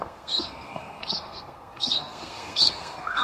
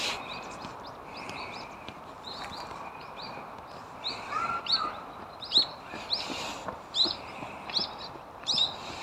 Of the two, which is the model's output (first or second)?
first